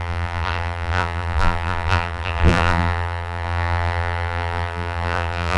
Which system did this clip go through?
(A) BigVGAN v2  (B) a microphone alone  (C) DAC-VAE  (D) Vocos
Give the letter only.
A